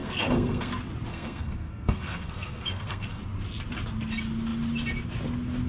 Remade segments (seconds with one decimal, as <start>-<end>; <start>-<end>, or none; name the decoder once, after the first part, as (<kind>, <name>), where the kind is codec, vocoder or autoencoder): 0.0-0.7 (codec, SNAC); 1.1-3.2